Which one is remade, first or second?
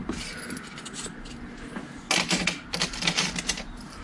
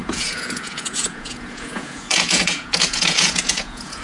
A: second